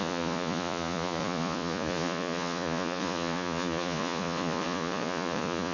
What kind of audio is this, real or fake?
fake